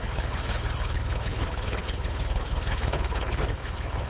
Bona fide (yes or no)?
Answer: no